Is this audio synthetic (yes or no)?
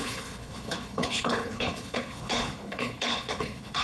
yes